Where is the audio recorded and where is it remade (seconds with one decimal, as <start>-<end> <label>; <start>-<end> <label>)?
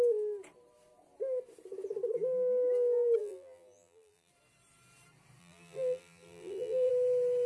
0.0-3.2 recorded; 3.2-4.3 remade; 4.3-5.4 recorded; 5.4-6.9 remade; 6.9-7.5 recorded